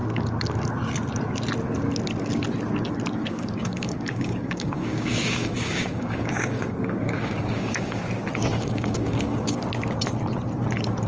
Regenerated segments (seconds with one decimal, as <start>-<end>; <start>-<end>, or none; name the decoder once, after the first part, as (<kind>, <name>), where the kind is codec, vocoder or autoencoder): 3.2-8.0 (codec, DAC); 8.5-9.6